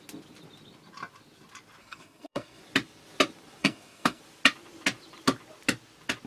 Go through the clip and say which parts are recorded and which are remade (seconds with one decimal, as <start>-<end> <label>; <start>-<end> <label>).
0.0-1.8 recorded; 1.8-2.6 remade; 2.6-3.6 recorded; 3.6-4.2 remade; 4.2-6.3 recorded